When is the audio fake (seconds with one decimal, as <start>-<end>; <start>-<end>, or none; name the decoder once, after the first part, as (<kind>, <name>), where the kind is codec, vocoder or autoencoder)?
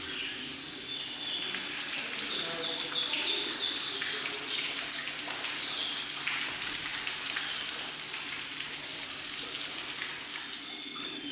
6.9-7.5 (vocoder, BigVGAN v2); 8.5-9.3